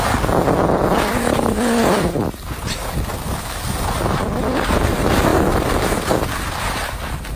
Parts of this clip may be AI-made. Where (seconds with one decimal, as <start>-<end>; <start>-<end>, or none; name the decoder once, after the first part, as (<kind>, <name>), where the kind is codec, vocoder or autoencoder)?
none